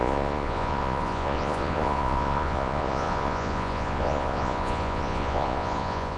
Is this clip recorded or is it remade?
remade